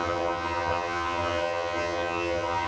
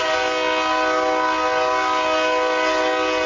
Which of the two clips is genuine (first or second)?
second